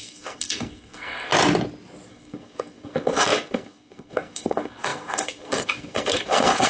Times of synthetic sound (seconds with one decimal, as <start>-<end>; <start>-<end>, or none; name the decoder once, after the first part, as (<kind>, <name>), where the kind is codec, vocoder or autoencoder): 0.0-1.3 (codec, SNAC); 2.1-6.7